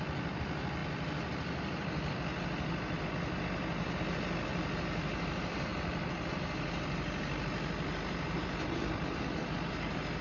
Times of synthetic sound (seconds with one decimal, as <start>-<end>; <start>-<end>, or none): none